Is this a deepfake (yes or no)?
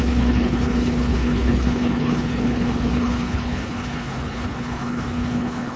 yes